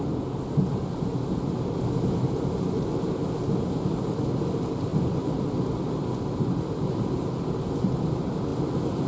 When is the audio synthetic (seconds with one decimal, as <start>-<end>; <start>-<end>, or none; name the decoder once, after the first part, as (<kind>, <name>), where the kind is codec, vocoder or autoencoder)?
none